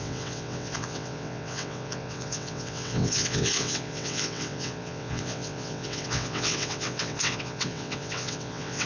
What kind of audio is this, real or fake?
fake